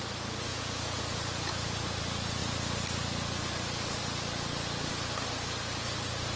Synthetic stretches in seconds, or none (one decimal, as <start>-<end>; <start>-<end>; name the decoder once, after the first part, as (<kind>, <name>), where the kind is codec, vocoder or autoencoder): 0.5-2.0 (vocoder, Vocos)